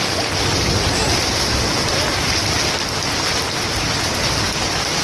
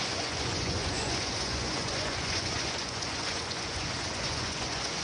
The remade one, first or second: second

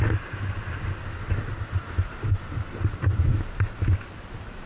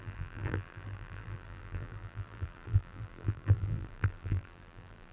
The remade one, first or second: second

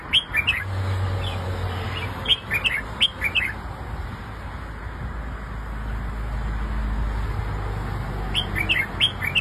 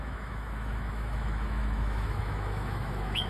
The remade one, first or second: second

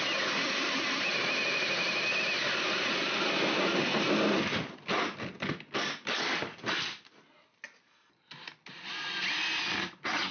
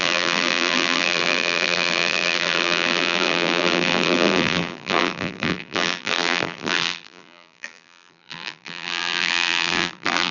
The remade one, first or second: second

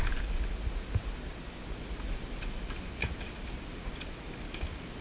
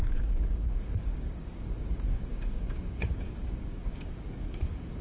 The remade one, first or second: second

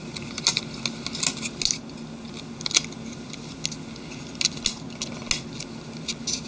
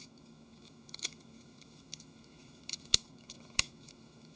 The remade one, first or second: second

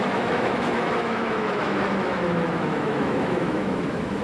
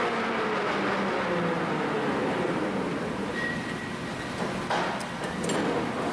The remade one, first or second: first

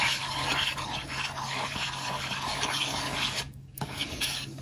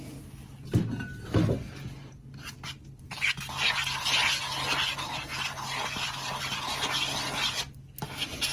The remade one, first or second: first